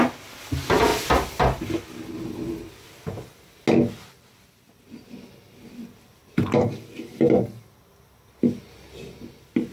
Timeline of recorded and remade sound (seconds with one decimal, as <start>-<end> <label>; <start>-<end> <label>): 0.0-9.7 recorded